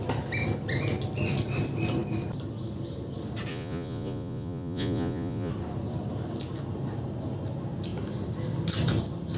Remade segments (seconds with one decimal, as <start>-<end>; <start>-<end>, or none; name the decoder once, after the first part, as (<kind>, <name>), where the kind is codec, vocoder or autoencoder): 3.5-5.5 (vocoder, Vocos)